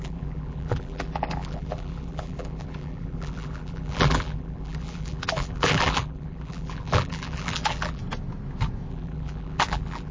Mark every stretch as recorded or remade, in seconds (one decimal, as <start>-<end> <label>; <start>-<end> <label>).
0.0-8.0 remade; 8.0-8.9 recorded; 8.9-10.1 remade